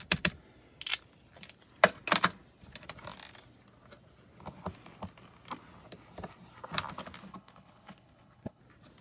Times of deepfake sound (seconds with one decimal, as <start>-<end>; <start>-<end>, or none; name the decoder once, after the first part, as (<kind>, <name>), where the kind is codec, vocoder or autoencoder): 7.3-8.6 (codec, HILCodec)